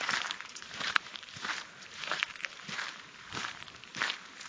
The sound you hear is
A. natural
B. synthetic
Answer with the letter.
B